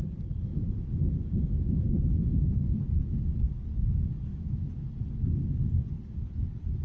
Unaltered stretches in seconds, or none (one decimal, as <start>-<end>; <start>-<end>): 0.0-0.5; 2.0-4.3; 4.9-6.8